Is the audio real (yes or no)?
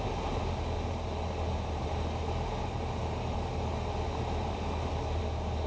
yes